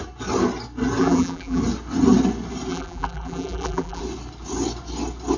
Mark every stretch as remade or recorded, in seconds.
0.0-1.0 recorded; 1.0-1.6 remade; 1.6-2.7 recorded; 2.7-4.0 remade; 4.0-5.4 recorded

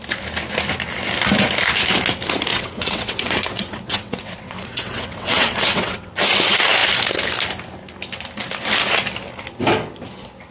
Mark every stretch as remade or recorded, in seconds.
0.0-2.5 recorded; 2.5-6.1 remade; 6.1-10.5 recorded